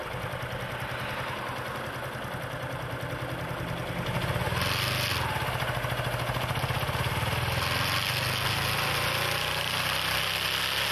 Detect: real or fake real